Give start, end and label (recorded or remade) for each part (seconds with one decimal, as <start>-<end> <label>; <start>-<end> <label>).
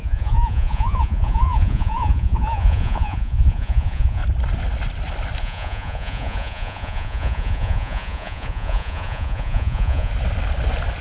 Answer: 0.0-4.2 remade; 4.2-5.4 recorded; 5.4-10.1 remade; 10.1-11.0 recorded